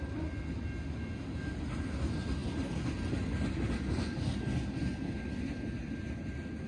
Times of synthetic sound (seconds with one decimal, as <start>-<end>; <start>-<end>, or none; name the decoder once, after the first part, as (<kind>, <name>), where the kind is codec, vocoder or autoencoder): none